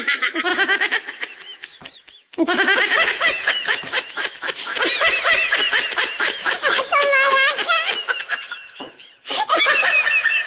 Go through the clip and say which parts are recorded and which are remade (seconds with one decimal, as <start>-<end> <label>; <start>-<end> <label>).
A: 0.0-4.7 remade; 4.7-6.2 recorded; 6.2-10.5 remade